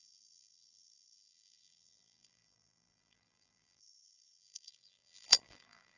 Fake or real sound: fake